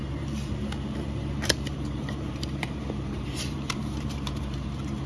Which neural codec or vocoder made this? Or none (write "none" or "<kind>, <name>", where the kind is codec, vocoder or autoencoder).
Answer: vocoder, BigVGAN v2